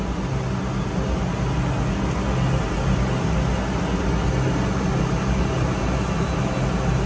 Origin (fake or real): real